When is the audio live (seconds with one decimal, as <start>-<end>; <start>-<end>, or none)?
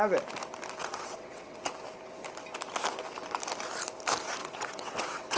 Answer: 0.0-0.8; 1.7-4.4